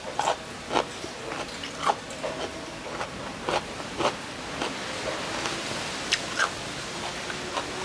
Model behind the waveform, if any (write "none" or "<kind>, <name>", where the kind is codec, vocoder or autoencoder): none